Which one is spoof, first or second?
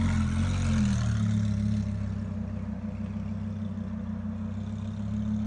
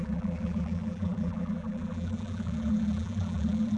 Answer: second